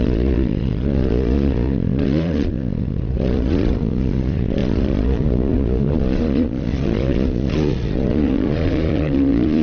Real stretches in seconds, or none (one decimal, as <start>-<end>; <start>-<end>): none